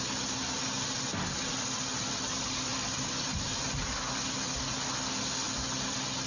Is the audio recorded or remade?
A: recorded